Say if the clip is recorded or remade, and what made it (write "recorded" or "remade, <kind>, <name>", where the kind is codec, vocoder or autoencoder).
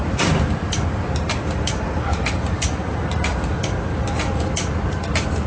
recorded